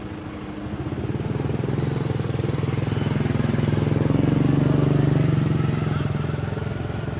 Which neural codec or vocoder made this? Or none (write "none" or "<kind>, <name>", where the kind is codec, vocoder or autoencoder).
none